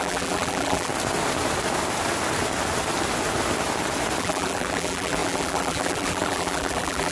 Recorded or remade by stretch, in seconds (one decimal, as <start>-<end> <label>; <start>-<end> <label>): 0.0-0.9 remade; 0.9-4.2 recorded; 4.2-7.1 remade